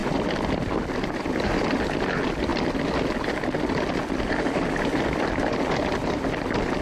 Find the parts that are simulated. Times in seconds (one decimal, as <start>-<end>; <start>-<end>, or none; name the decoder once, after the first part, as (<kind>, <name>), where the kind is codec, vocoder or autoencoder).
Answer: none